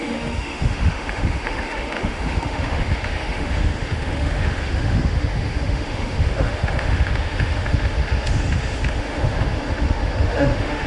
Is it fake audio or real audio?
fake